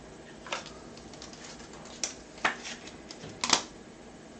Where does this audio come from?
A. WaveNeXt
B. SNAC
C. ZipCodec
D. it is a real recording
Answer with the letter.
D